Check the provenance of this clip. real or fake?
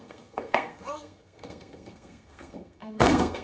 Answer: fake